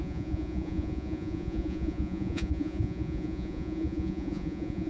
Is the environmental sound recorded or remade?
remade